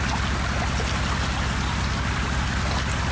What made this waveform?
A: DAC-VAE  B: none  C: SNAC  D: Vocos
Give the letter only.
B